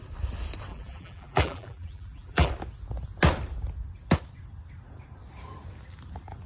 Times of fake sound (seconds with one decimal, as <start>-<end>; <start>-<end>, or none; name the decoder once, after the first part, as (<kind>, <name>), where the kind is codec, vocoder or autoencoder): 0.7-2.5 (vocoder, BigVGAN v2)